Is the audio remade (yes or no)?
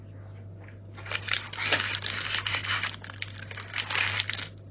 no